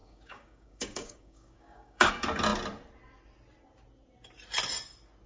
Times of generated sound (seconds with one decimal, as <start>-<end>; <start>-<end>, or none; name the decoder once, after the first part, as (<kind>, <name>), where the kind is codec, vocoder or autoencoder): 0.0-2.1 (codec, DAC)